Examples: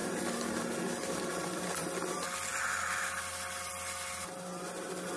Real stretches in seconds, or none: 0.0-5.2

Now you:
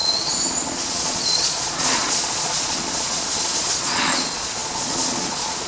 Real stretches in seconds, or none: none

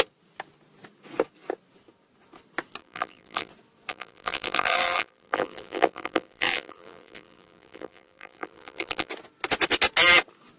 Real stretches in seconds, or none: 0.0-2.8; 3.5-3.9; 9.1-10.6

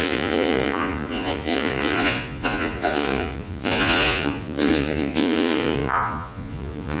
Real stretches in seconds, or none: none

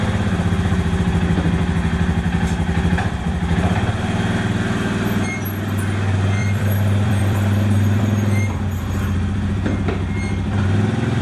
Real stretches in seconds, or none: 0.0-6.4; 8.0-11.2

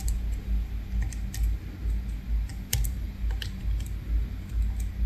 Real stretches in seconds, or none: 0.0-2.5; 3.1-5.1